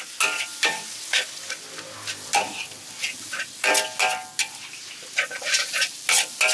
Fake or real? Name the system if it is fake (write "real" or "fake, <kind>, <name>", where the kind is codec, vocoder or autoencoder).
real